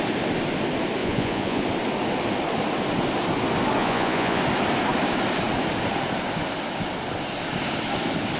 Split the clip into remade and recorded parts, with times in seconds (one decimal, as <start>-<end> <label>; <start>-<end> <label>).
0.0-1.0 recorded; 1.0-1.6 remade; 1.6-3.8 recorded; 3.8-4.4 remade; 4.4-8.4 recorded